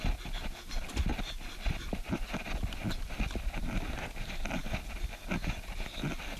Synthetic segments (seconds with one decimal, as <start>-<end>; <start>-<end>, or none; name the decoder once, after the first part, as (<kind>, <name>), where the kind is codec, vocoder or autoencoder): none